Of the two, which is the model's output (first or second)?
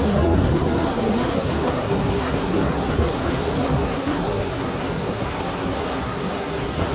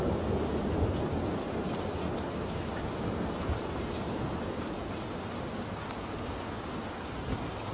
first